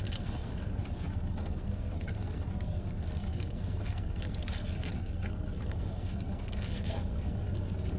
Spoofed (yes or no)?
yes